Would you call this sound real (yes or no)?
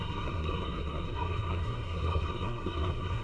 no